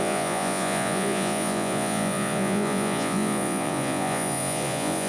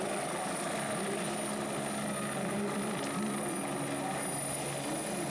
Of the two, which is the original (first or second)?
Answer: second